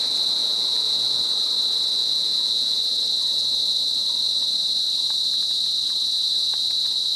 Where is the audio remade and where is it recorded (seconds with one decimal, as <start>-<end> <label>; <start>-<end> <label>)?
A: 0.0-0.4 recorded; 0.4-1.2 remade; 1.2-2.0 recorded; 2.0-2.8 remade; 2.8-7.2 recorded